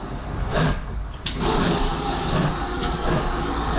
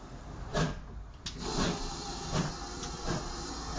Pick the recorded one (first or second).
second